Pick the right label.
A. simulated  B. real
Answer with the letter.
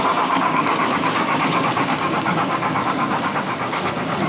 A